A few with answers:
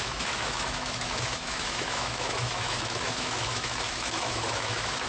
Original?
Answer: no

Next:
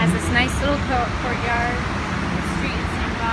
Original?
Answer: no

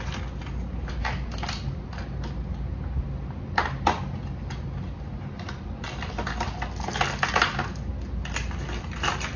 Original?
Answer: yes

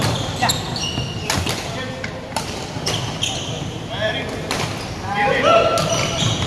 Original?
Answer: yes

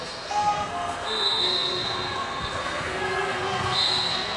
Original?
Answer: no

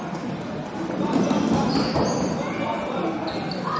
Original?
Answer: yes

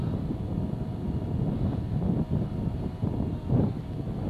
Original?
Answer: yes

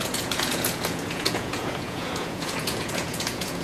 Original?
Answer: no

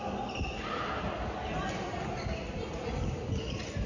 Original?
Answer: yes